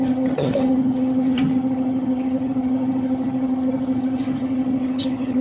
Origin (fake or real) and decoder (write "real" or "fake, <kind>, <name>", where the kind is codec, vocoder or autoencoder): fake, vocoder, HiFi-GAN